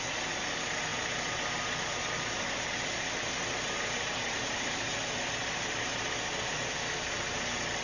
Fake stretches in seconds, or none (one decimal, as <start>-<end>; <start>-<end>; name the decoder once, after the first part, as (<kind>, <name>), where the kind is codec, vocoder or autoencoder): none